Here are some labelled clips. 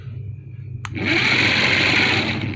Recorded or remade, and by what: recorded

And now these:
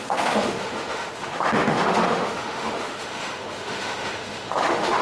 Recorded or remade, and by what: remade, autoencoder, DAC-VAE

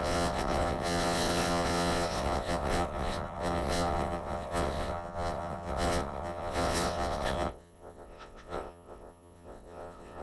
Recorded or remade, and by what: remade, vocoder, WaveNeXt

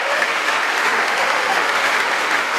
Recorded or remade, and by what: remade, autoencoder, DAC-VAE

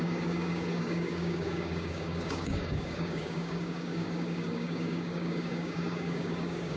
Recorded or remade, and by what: remade, codec, DAC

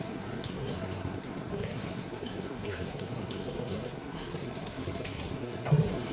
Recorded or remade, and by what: remade, codec, SNAC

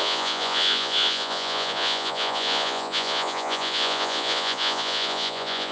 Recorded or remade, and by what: remade, vocoder, Vocos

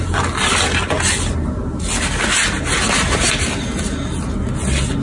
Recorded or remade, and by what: recorded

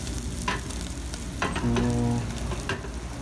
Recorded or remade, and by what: recorded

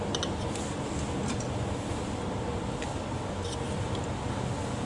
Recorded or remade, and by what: recorded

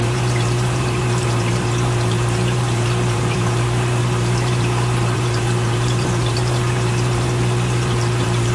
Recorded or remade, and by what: remade, vocoder, BigVGAN v2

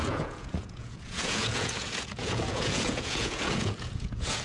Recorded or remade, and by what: remade, vocoder, Vocos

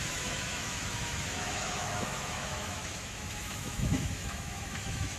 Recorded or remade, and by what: remade, autoencoder, DAC-VAE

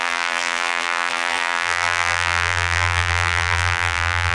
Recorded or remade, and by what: remade, vocoder, BigVGAN v2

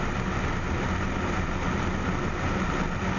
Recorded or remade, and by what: recorded